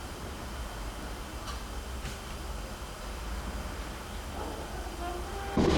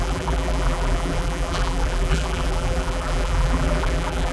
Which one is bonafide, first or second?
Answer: first